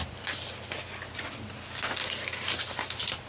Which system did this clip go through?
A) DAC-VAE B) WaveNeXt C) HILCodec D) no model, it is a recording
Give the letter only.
D